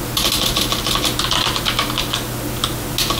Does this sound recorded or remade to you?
recorded